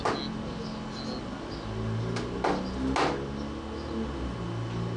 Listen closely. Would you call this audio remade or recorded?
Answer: recorded